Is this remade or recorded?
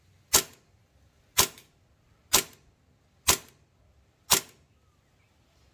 recorded